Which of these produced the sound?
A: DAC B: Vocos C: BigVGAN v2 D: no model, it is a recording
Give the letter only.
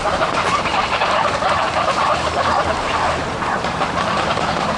C